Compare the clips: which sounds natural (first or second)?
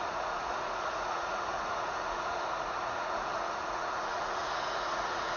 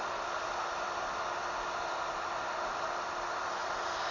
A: second